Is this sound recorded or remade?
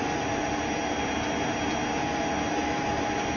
recorded